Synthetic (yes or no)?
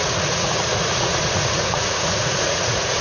yes